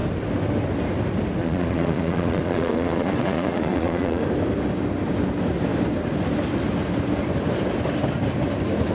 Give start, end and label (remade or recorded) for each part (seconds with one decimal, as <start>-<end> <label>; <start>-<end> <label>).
0.0-1.4 recorded; 1.4-4.2 remade; 4.2-8.9 recorded